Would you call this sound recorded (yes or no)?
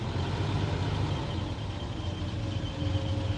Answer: yes